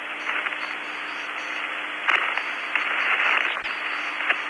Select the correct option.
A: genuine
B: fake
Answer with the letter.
A